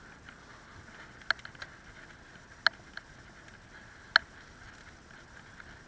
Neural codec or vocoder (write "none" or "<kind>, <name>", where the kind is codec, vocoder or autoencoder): none